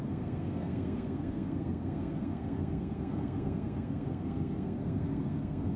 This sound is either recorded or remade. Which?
remade